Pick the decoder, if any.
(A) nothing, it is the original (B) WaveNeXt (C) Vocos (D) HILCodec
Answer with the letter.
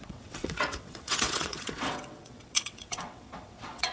B